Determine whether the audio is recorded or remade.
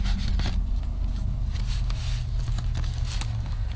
recorded